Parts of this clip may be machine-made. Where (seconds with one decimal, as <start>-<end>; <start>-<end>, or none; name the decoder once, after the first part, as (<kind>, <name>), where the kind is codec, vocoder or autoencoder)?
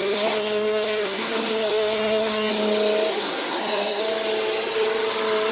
0.0-2.5 (codec, SNAC); 3.1-4.0